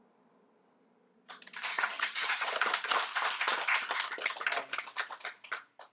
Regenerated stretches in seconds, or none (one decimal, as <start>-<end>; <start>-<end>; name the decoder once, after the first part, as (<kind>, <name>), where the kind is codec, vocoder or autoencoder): 1.7-2.5 (vocoder, HiFi-GAN)